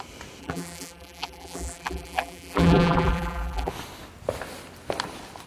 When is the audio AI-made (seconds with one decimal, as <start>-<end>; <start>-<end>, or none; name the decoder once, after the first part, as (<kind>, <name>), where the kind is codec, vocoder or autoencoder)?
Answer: 0.4-3.7 (vocoder, BigVGAN v2)